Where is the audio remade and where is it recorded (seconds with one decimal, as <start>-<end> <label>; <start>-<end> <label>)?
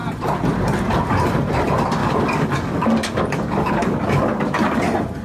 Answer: 0.0-2.0 recorded; 2.0-4.8 remade; 4.8-5.2 recorded